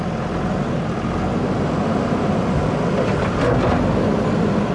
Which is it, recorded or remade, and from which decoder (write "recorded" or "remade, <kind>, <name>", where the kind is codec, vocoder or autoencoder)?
recorded